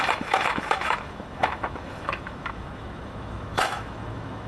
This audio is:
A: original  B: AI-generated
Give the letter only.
B